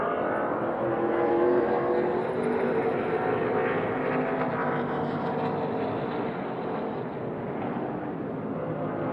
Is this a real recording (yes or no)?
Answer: yes